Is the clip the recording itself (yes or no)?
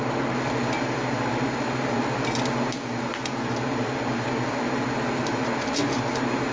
yes